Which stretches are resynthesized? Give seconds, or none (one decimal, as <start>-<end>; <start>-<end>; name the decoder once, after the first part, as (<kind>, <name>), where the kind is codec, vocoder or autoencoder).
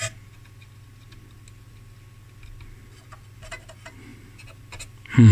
none